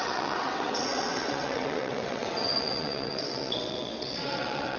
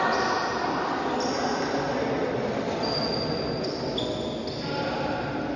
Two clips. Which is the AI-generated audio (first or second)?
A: first